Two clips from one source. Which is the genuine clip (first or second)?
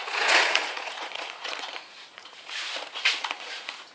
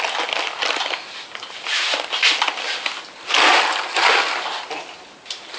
second